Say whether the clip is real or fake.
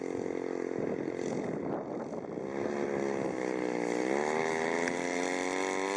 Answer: real